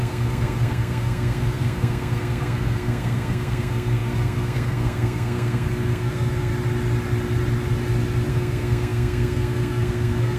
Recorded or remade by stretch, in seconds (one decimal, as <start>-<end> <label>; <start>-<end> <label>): 0.0-6.5 remade; 6.5-8.3 recorded; 8.3-10.4 remade